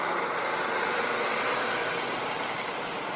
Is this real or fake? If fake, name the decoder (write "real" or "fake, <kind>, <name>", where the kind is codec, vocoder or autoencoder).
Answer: real